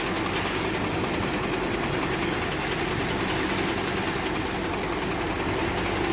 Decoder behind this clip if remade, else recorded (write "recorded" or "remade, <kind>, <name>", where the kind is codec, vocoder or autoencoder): recorded